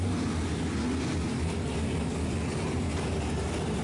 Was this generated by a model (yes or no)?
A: no